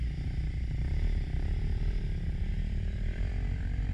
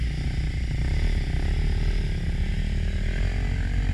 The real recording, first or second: second